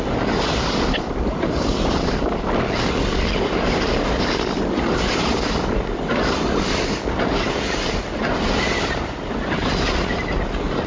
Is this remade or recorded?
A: recorded